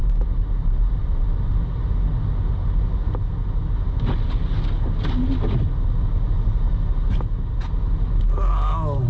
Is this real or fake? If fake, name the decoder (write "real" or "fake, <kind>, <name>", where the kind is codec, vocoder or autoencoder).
real